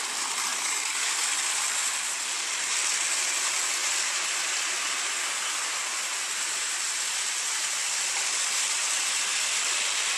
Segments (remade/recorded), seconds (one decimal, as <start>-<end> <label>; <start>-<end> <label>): 0.0-0.5 recorded; 0.5-1.1 remade; 1.1-10.2 recorded